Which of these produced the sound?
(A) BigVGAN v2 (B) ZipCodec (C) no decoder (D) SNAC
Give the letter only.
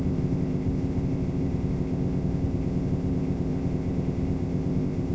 B